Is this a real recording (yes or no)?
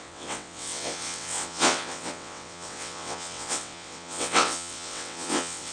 no